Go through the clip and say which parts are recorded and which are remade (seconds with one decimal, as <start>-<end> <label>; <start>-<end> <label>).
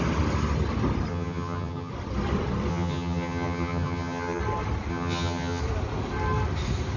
0.0-1.1 recorded; 1.1-1.9 remade; 1.9-2.7 recorded; 2.7-4.4 remade; 4.4-4.9 recorded; 4.9-5.6 remade; 5.6-7.0 recorded